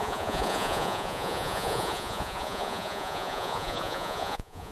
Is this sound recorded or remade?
remade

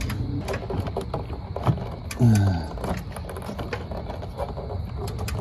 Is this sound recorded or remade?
recorded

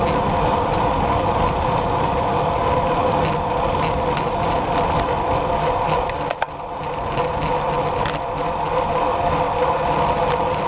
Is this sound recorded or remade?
recorded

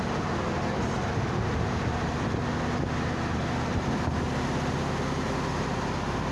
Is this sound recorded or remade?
recorded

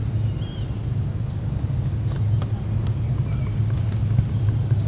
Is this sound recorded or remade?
recorded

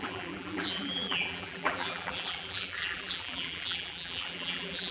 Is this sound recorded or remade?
remade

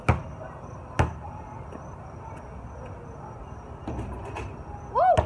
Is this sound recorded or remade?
recorded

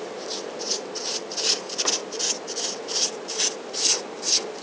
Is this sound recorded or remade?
recorded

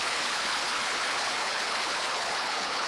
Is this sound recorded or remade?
remade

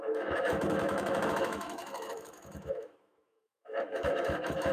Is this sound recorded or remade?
remade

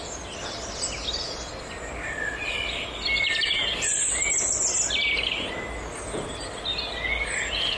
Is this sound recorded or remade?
recorded